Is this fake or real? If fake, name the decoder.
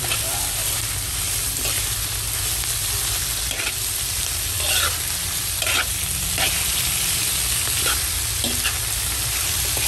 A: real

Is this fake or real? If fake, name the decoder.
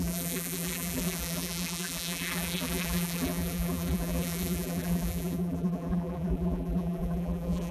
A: fake, vocoder, BigVGAN v2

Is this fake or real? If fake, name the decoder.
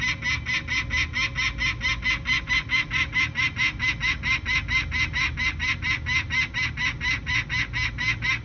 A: real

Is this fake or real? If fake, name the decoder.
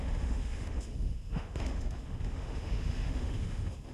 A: fake, autoencoder, DAC-VAE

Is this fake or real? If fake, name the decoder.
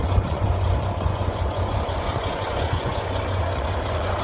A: fake, vocoder, Vocos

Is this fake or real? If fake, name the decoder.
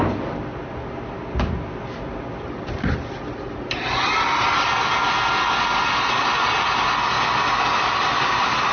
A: real